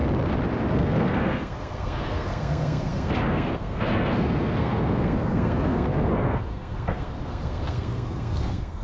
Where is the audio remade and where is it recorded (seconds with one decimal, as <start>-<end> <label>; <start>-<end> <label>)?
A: 0.0-0.7 recorded; 0.7-8.8 remade